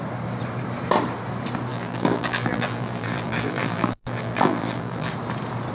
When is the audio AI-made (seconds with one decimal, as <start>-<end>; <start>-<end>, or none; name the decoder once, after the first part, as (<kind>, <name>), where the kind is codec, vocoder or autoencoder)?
1.7-5.1 (vocoder, BigVGAN v2)